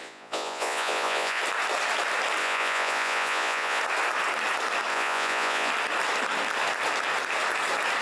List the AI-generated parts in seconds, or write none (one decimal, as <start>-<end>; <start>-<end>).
0.0-1.4; 2.4-3.8; 4.9-5.7

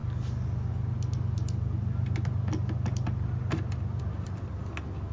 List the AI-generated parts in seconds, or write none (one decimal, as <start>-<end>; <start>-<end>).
none

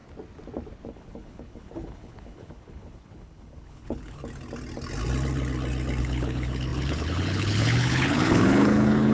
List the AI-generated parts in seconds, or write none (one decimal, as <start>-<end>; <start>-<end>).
0.9-4.2; 6.0-9.1